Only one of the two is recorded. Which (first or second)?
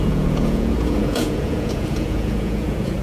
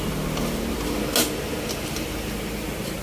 second